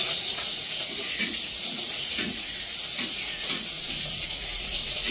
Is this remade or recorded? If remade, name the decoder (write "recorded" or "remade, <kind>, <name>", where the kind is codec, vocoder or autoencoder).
remade, vocoder, Vocos